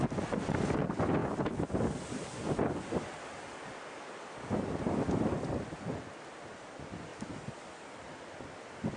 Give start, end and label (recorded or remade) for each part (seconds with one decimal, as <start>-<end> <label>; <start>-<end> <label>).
0.0-9.0 recorded